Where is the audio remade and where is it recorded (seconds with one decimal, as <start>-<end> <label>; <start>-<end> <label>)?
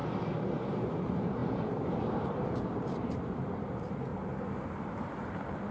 0.0-0.9 recorded; 0.9-4.1 remade; 4.1-4.8 recorded; 4.8-5.7 remade